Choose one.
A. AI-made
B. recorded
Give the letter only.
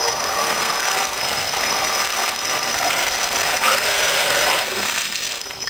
A